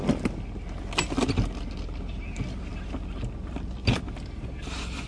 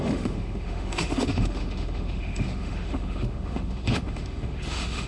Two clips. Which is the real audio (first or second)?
first